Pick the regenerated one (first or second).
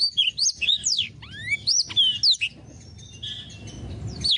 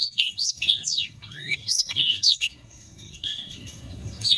second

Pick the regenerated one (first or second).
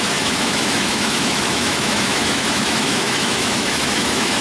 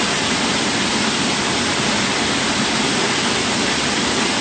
first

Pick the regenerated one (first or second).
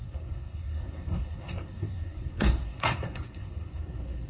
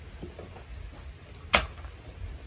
first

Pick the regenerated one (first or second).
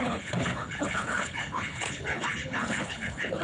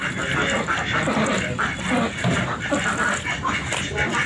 first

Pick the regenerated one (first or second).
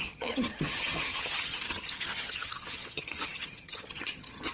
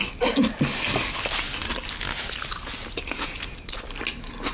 first